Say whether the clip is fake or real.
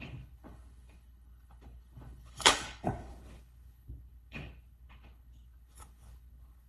fake